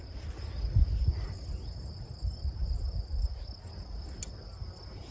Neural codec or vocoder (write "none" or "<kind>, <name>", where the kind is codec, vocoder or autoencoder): none